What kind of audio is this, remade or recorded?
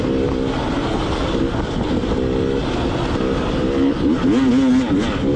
recorded